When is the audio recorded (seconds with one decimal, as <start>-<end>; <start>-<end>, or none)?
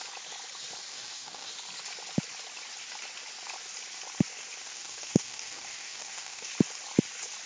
0.0-0.9; 1.5-4.6; 6.5-7.5